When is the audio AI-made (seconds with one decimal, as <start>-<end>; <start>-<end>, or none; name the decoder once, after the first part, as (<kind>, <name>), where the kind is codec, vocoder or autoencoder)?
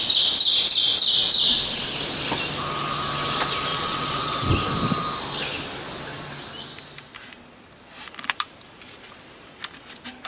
3.7-4.5 (vocoder, WaveNeXt)